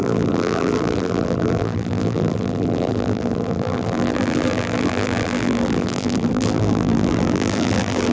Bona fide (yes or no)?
no